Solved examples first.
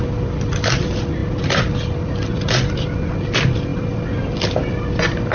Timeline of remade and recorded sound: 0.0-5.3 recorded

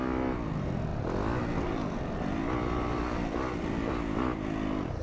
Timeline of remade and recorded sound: 0.0-5.0 recorded

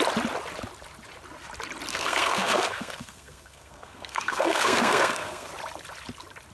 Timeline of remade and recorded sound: 0.0-1.9 recorded; 1.9-5.5 remade; 5.5-6.5 recorded

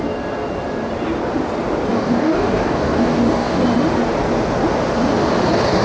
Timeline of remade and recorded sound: 0.0-1.9 recorded; 1.9-3.6 remade; 3.6-5.8 recorded

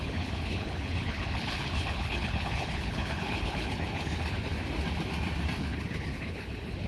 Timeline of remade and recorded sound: 0.0-4.5 remade; 4.5-5.6 recorded; 5.6-6.9 remade

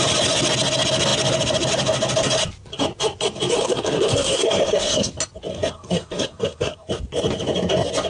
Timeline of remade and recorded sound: 0.0-3.6 recorded; 3.6-5.1 remade; 5.1-5.5 recorded; 5.5-6.9 remade; 6.9-8.1 recorded

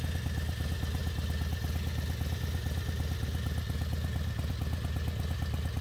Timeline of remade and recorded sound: 0.0-5.8 recorded